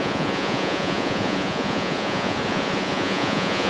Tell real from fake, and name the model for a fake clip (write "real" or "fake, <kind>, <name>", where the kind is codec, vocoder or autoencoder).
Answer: fake, vocoder, Vocos